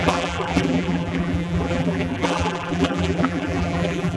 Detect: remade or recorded remade